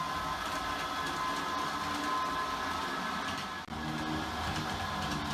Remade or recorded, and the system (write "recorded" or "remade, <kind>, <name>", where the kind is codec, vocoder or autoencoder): recorded